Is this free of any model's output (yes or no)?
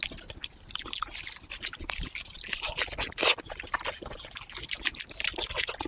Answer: yes